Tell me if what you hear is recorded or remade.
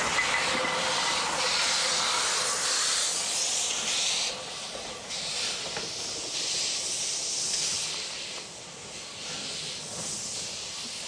recorded